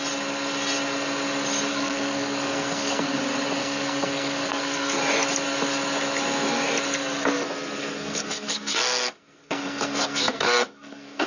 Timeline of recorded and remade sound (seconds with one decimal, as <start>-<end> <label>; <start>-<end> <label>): 0.0-1.7 recorded; 1.7-3.2 remade; 3.2-3.6 recorded; 3.6-5.0 remade; 5.0-7.8 recorded; 7.8-11.3 remade